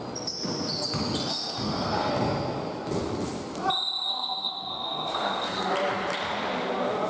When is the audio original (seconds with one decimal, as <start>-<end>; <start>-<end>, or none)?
0.0-1.3; 2.1-4.1; 5.7-7.1